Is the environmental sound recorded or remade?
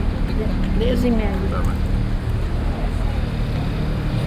recorded